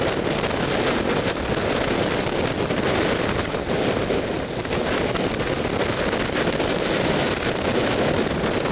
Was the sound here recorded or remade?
recorded